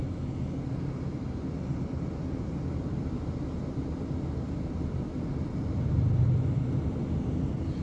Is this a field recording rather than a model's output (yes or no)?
yes